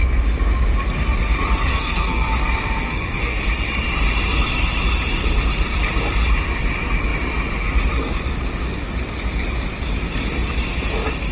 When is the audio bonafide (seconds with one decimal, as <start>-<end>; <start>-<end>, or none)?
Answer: 0.0-1.7; 2.3-2.8; 3.4-11.3